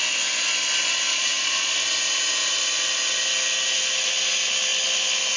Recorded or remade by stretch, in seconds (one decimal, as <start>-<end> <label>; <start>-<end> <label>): 0.0-1.1 recorded; 1.1-1.7 remade; 1.7-5.4 recorded